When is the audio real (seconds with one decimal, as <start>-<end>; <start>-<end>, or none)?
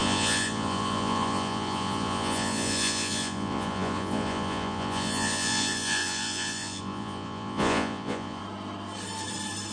8.4-9.7